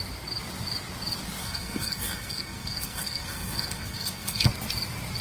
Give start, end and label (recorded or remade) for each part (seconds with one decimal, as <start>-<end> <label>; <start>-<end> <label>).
0.0-1.4 recorded; 1.4-4.5 remade; 4.5-5.2 recorded